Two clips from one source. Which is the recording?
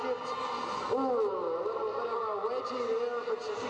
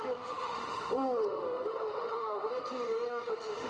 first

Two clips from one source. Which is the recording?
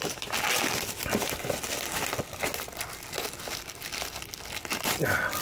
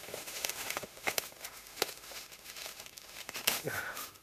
first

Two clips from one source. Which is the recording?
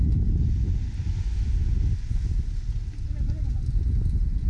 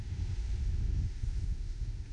first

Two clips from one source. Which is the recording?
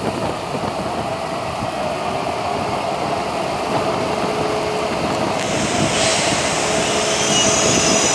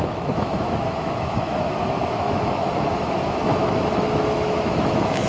first